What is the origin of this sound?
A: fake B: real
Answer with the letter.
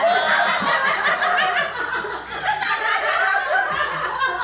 B